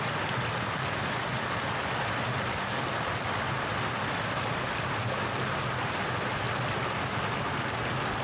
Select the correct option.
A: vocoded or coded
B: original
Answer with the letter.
B